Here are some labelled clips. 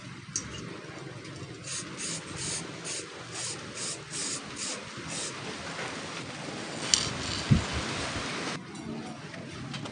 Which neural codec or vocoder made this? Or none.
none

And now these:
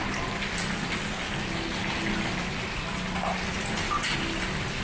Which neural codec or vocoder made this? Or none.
none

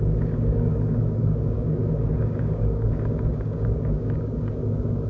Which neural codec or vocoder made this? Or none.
codec, DAC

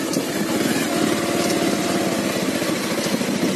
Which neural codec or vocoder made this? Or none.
none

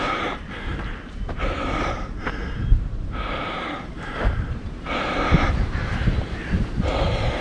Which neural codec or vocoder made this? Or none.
vocoder, BigVGAN v2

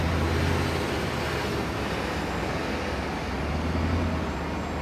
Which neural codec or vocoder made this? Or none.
none